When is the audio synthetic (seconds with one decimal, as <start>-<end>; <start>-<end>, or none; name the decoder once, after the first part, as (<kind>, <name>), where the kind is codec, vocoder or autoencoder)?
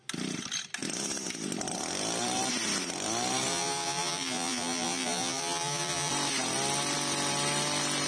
3.5-6.1 (vocoder, BigVGAN v2)